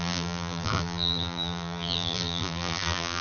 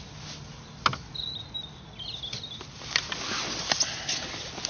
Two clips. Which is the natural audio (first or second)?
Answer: second